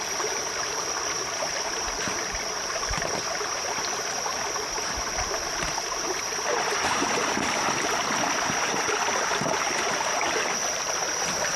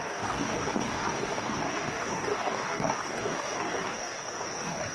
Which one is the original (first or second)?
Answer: first